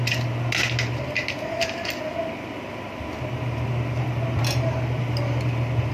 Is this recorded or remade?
recorded